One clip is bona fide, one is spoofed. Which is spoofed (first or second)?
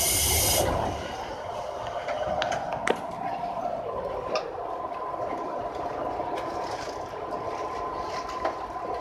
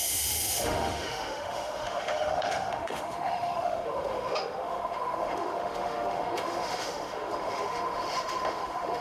second